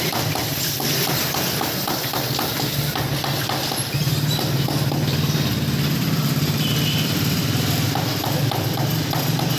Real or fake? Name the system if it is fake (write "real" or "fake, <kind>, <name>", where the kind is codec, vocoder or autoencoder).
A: fake, vocoder, BigVGAN v2